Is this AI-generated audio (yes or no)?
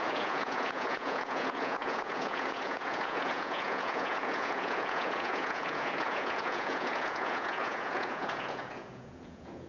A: yes